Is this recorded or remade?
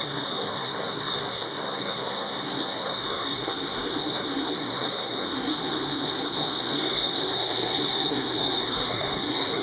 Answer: remade